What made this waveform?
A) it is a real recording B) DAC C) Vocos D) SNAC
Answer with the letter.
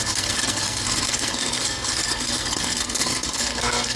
D